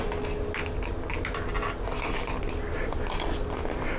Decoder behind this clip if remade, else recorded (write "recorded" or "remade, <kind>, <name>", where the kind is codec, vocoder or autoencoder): recorded